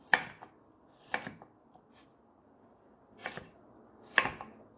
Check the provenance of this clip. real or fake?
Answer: real